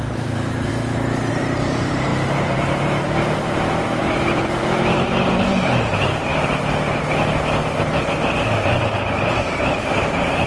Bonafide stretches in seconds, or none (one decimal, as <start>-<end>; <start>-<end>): 0.7-1.3; 6.3-9.5